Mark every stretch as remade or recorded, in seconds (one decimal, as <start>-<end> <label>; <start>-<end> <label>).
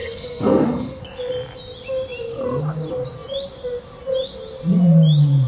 0.0-1.0 remade; 1.0-5.5 recorded